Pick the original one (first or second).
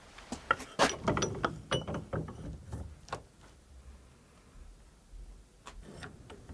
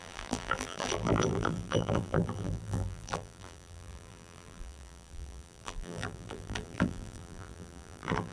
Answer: first